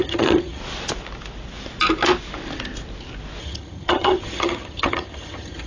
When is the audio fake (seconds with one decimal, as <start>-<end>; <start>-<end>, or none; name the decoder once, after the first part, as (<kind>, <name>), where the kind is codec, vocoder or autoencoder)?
0.0-0.6 (vocoder, HiFi-GAN); 3.4-5.7